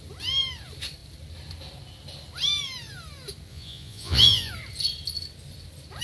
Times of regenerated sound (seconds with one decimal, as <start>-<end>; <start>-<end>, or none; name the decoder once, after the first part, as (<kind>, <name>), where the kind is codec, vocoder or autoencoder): 3.5-4.5 (vocoder, Vocos)